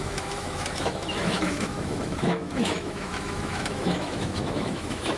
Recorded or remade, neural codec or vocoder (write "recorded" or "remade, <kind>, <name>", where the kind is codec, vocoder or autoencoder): remade, autoencoder, DAC-VAE